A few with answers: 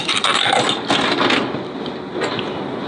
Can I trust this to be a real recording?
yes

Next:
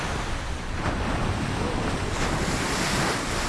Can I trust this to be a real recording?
yes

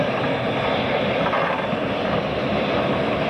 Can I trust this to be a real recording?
yes